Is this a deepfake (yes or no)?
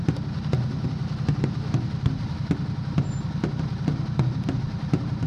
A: no